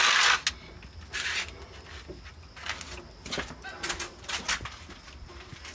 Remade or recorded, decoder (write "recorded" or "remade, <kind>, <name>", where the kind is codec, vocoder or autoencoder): recorded